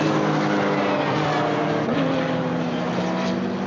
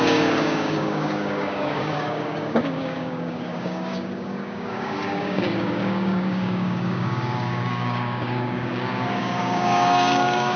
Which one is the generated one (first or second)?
second